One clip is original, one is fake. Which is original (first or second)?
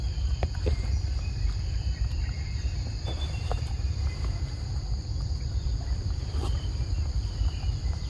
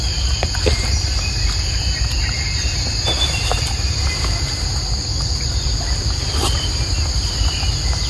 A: second